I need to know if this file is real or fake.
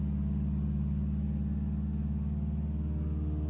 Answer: real